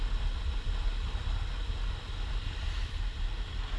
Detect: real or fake real